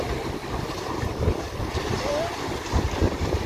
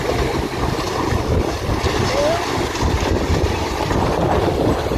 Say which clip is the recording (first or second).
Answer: second